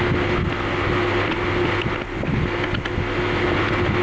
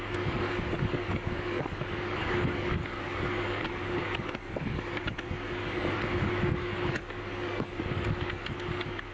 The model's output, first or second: second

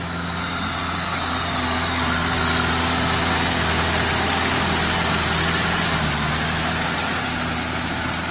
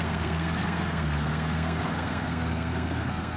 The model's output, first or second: second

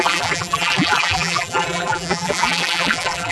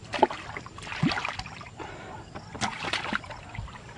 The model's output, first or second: first